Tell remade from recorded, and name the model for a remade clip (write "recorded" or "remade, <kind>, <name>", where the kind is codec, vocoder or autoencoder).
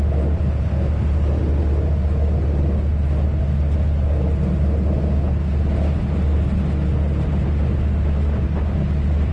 recorded